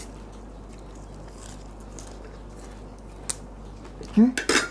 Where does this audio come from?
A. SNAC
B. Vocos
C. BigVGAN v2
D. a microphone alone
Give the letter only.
D